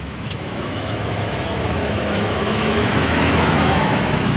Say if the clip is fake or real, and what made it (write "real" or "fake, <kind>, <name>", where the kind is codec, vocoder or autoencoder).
fake, autoencoder, DAC-VAE